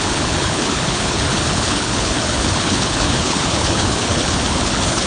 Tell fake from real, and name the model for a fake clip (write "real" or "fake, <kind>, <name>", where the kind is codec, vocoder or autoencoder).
fake, codec, HILCodec